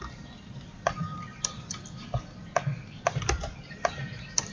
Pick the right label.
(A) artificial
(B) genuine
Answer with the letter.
A